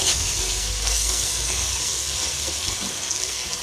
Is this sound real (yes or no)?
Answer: no